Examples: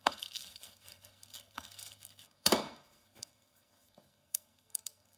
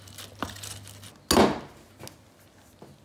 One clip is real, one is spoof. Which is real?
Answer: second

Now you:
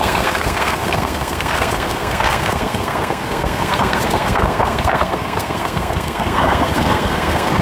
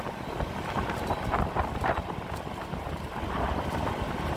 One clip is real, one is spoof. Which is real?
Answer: second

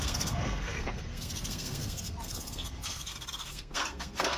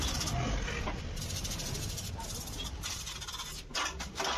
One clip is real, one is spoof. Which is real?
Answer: second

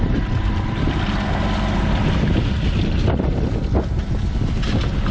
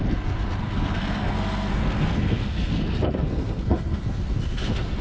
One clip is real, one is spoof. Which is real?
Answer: first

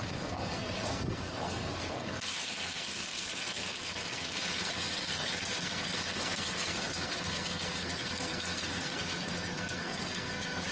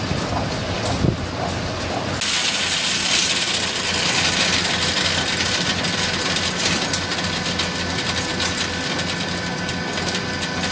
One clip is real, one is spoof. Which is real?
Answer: second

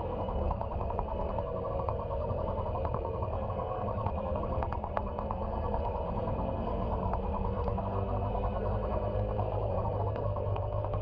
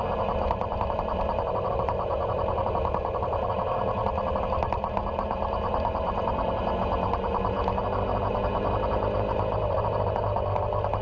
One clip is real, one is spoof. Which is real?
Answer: second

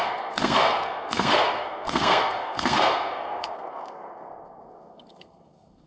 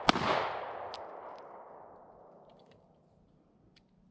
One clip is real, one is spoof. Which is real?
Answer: second